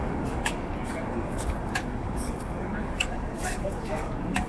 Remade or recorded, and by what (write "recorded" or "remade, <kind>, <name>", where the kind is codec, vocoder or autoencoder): remade, codec, DAC